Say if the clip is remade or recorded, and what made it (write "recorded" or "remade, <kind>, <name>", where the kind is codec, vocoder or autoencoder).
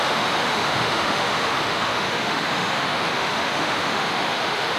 remade, autoencoder, DAC-VAE